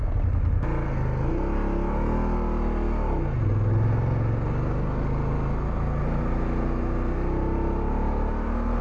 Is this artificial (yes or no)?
no